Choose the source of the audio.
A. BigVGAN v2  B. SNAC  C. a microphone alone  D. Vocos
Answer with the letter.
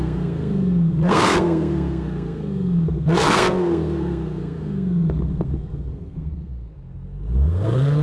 B